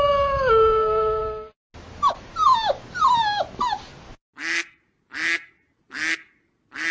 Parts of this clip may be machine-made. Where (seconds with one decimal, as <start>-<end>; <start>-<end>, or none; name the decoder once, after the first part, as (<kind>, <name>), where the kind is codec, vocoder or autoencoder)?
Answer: none